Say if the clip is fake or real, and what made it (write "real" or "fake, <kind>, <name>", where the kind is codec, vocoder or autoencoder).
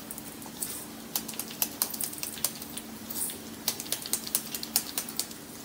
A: real